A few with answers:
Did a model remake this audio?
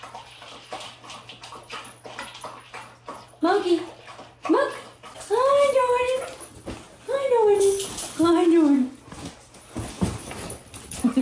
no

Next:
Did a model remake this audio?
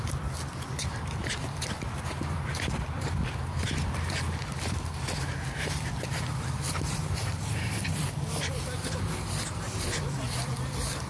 yes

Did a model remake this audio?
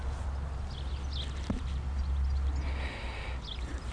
no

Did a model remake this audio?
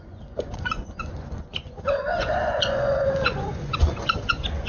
yes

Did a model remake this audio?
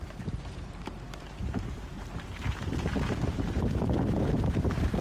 yes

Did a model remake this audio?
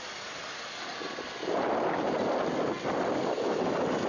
no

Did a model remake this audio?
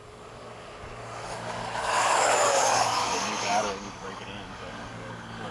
yes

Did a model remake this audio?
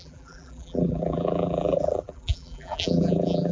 yes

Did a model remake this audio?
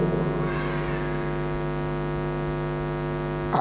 no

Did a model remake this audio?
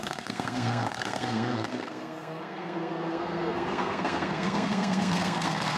yes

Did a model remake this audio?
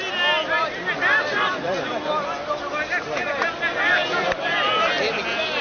no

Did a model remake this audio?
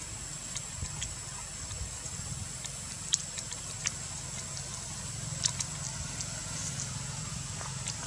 no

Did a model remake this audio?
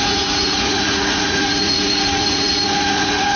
yes